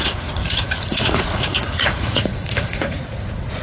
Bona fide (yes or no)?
no